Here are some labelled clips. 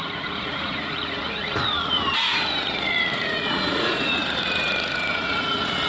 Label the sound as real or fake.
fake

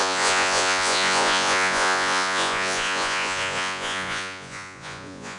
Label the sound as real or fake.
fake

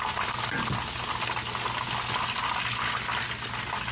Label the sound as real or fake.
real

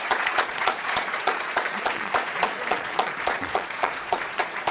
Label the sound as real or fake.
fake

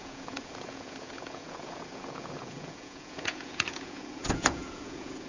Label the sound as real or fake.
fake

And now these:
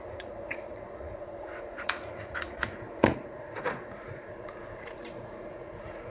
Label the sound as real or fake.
fake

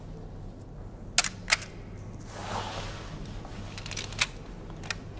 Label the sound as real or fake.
real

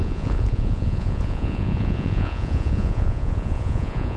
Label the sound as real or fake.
fake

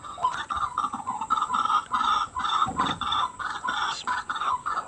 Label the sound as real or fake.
fake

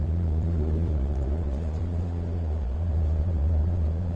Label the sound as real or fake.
fake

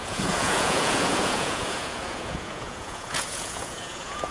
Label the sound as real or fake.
fake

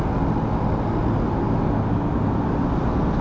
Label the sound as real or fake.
real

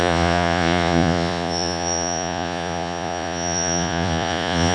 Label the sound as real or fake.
fake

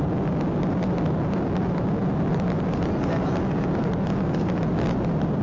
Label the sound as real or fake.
real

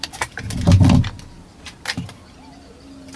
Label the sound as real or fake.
real